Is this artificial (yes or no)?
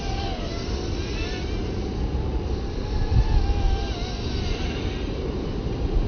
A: no